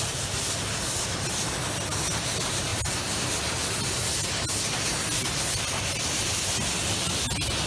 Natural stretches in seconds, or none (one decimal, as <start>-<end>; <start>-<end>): 0.0-7.7

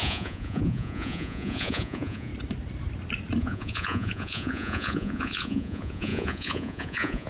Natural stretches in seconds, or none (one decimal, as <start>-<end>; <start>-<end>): 2.3-3.4